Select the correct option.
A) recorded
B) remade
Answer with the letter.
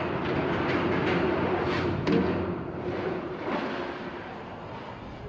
A